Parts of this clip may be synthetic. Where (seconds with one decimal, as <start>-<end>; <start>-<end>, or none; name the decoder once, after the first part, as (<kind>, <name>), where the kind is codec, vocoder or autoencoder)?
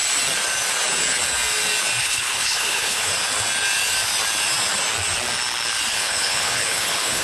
2.0-3.1 (codec, HILCodec); 5.9-7.2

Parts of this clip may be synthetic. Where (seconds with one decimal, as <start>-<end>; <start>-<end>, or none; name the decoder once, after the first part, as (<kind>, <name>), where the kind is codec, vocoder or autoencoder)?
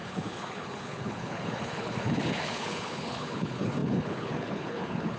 0.0-5.2 (codec, HILCodec)